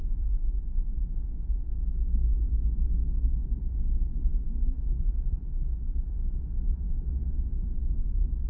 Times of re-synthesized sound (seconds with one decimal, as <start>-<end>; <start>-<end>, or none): 0.0-3.7; 4.3-5.3